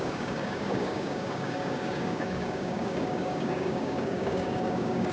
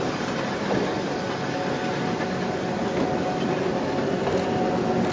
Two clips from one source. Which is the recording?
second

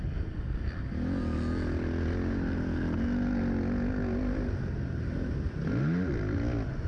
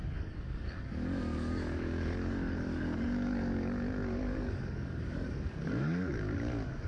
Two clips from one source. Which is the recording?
first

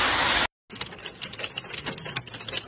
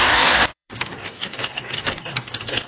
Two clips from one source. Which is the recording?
first